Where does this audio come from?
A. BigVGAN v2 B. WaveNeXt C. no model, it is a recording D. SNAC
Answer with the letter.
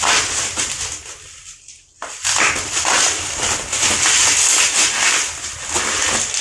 C